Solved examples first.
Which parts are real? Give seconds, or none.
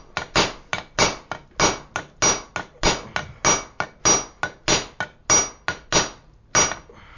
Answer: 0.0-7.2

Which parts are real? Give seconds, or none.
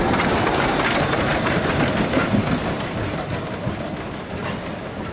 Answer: 0.0-5.1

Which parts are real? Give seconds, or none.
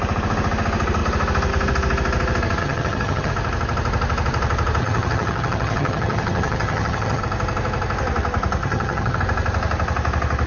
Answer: 0.0-2.6; 3.3-4.8; 7.2-8.6; 9.2-10.5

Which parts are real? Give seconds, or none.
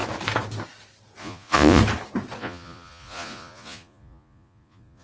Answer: 0.0-1.2; 1.8-2.4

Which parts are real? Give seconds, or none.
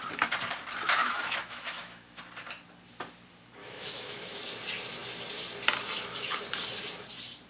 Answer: 0.0-1.0; 2.2-3.6; 4.4-7.5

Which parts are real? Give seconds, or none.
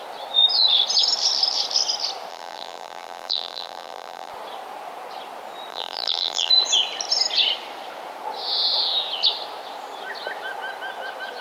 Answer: 0.0-2.3; 4.3-5.7; 6.5-11.4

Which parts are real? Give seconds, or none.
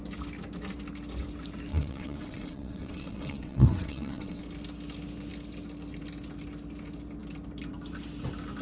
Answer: 0.0-1.7; 4.4-8.6